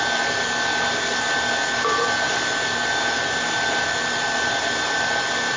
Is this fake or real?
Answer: real